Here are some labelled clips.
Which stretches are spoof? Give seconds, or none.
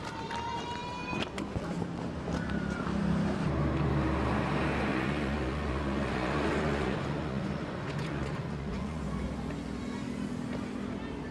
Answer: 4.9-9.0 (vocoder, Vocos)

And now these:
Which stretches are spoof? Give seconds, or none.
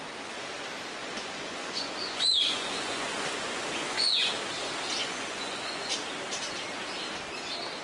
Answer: 1.0-4.3 (vocoder, Vocos); 5.0-5.9